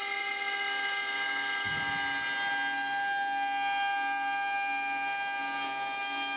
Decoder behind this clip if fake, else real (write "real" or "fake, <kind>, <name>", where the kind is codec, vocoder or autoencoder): real